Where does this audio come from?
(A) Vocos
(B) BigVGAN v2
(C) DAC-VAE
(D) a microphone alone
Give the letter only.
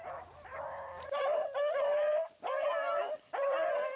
B